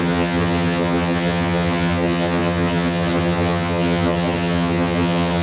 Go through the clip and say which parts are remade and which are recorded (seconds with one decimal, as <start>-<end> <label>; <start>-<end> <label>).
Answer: 0.0-5.4 remade

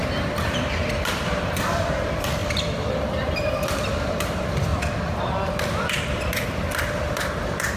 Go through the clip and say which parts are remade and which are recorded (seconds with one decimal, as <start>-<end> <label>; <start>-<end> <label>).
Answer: 0.0-4.7 remade; 4.7-5.5 recorded; 5.5-7.8 remade

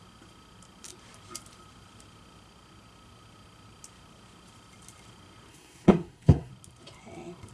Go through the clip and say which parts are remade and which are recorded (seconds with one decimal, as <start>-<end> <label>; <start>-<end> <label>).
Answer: 0.0-5.5 recorded; 5.5-6.5 remade; 6.5-7.5 recorded

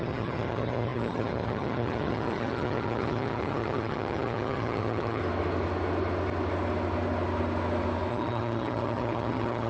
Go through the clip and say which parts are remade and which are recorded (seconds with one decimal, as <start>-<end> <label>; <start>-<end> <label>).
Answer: 0.0-5.2 remade; 5.2-8.1 recorded; 8.1-9.7 remade